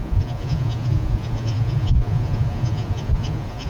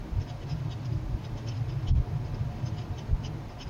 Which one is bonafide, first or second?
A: second